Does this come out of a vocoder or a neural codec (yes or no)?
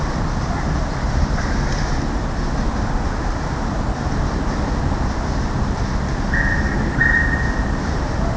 no